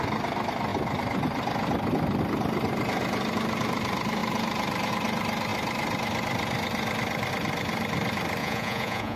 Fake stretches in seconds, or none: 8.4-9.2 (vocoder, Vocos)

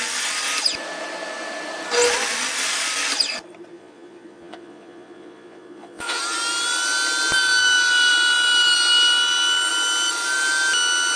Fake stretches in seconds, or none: 3.7-6.2 (vocoder, Vocos)

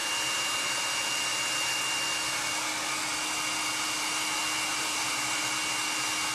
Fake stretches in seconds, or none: 4.7-5.4 (vocoder, BigVGAN v2)

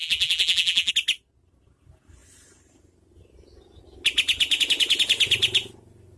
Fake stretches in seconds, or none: 0.0-0.9 (vocoder, BigVGAN v2)